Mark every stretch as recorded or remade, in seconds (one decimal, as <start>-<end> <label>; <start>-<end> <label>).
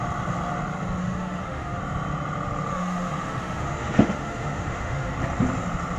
0.0-1.0 recorded; 1.0-1.8 remade; 1.8-2.7 recorded; 2.7-5.1 remade; 5.1-6.0 recorded